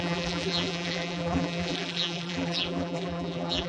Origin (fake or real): fake